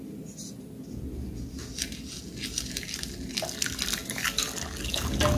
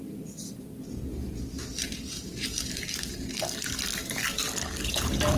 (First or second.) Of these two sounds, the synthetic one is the second